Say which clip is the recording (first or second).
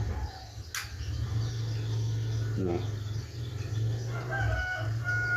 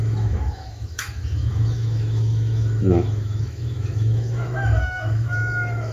first